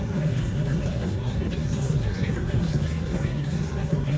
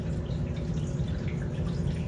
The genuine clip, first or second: second